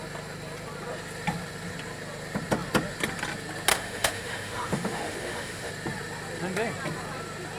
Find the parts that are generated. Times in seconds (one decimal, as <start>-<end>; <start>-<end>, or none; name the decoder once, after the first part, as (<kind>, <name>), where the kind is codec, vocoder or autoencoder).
3.7-5.7 (autoencoder, DAC-VAE)